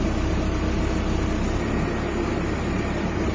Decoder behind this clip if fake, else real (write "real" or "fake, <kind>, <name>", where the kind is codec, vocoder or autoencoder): real